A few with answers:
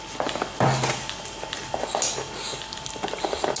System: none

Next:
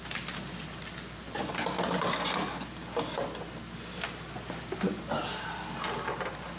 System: none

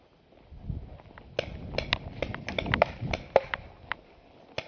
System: none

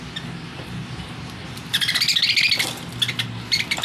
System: none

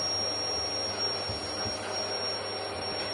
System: none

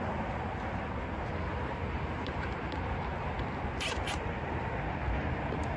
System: none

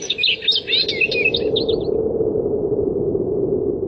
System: none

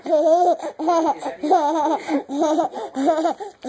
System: none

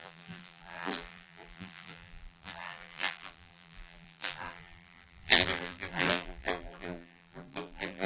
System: vocoder, BigVGAN v2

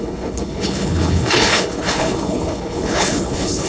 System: codec, HILCodec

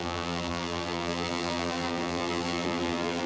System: vocoder, BigVGAN v2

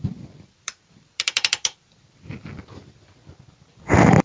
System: vocoder, BigVGAN v2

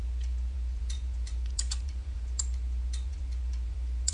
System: vocoder, Vocos